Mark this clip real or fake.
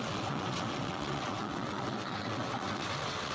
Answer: fake